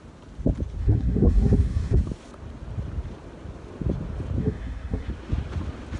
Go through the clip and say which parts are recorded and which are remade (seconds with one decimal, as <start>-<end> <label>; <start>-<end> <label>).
0.0-0.8 recorded; 0.8-2.0 remade; 2.0-4.4 recorded; 4.4-5.1 remade; 5.1-6.0 recorded